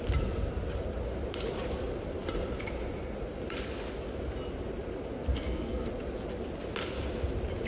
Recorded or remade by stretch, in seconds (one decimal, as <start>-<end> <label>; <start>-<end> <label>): 0.0-5.3 recorded; 5.3-5.9 remade; 5.9-7.7 recorded